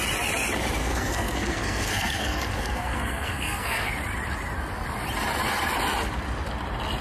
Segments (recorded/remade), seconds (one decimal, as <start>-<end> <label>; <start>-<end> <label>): 0.0-0.8 recorded; 0.8-3.9 remade; 3.9-7.0 recorded